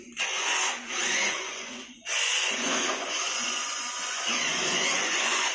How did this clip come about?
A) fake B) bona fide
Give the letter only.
A